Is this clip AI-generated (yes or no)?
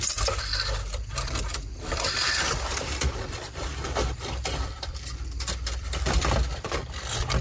yes